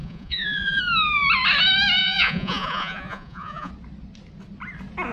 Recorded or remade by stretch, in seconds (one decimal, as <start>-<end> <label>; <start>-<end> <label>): 0.0-0.8 remade; 0.8-2.0 recorded; 2.0-3.7 remade; 3.7-5.1 recorded